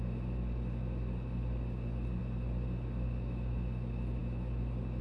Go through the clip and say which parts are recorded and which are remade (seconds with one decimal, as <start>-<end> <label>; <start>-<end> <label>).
0.0-5.0 recorded